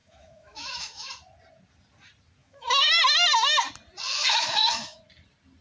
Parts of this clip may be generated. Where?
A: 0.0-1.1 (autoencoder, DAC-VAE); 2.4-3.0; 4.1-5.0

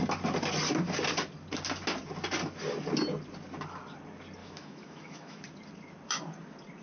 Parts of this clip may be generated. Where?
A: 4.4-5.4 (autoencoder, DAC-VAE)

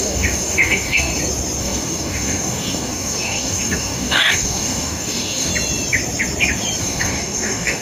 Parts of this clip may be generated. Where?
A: 0.0-1.1 (codec, DAC); 1.6-5.5; 6.8-7.8